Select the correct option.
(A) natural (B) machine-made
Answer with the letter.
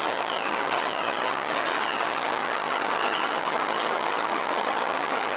B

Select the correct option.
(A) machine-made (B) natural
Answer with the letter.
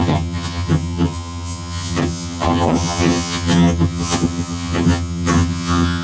A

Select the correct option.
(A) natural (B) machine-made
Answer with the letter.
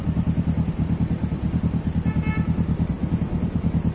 A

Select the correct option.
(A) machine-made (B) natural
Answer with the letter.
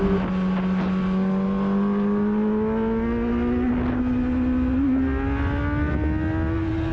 B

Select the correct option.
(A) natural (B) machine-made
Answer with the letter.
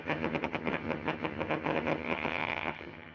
B